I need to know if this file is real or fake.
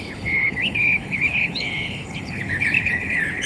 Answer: fake